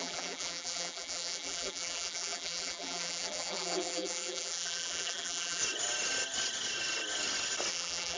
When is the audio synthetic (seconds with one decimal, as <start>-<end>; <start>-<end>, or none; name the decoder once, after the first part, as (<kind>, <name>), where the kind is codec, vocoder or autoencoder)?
0.0-5.6 (vocoder, BigVGAN v2); 7.7-8.2